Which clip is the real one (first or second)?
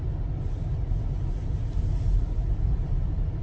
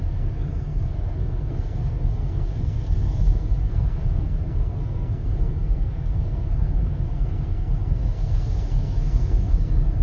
first